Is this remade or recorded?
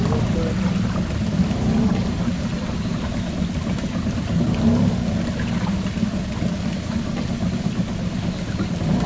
recorded